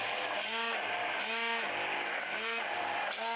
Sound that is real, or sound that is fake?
real